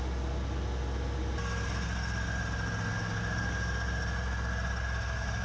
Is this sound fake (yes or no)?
no